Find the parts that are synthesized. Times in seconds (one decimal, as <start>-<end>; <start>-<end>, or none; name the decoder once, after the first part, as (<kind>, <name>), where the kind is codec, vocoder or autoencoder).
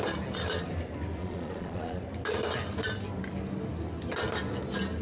1.2-2.0 (vocoder, Vocos)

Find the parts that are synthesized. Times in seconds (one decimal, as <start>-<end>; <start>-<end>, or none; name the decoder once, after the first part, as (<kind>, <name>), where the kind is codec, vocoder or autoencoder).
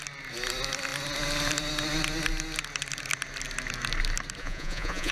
4.4-5.1 (vocoder, Vocos)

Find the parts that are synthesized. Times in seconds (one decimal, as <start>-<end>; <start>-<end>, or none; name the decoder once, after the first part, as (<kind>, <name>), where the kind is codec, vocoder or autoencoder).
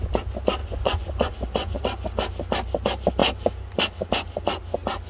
0.6-1.8 (vocoder, Vocos)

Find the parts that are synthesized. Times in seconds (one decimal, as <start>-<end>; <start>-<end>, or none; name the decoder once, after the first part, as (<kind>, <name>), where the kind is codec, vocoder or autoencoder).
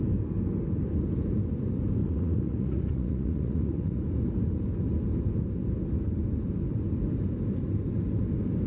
2.0-4.0 (vocoder, Vocos)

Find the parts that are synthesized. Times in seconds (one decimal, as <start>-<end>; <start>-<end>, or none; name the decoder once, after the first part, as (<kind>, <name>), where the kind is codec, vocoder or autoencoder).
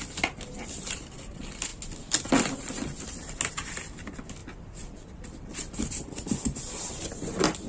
none